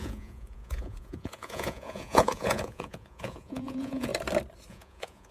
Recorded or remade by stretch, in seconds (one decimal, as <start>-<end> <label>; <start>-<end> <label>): 0.0-4.1 remade; 4.1-4.7 recorded; 4.7-5.3 remade

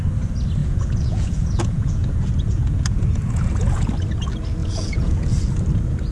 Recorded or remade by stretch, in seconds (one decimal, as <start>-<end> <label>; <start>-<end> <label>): 0.0-0.6 recorded; 0.6-3.9 remade; 3.9-4.6 recorded; 4.6-5.3 remade; 5.3-6.1 recorded